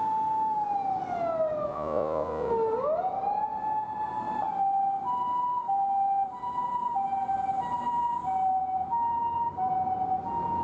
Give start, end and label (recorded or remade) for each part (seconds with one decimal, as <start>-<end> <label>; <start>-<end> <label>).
0.0-1.7 recorded; 1.7-2.5 remade; 2.5-10.6 recorded